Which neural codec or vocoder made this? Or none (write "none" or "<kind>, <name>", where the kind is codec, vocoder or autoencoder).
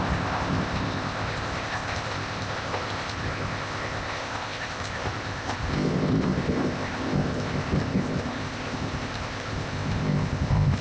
codec, ZipCodec